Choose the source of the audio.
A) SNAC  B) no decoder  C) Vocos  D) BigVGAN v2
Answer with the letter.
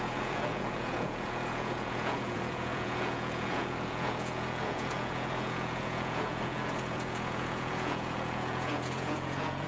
C